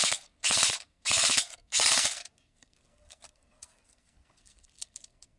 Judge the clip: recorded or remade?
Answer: remade